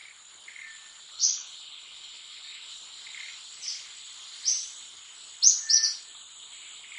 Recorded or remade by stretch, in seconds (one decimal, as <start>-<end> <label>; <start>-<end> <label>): 0.0-1.1 recorded; 1.1-2.7 remade; 2.7-7.0 recorded